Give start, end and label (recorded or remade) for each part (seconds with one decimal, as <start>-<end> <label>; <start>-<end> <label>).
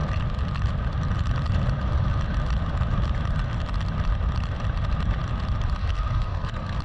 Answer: 0.0-5.8 recorded; 5.8-6.8 remade